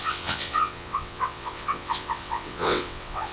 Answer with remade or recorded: remade